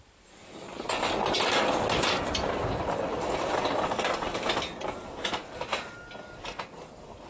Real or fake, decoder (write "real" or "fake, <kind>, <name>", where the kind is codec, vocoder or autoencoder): real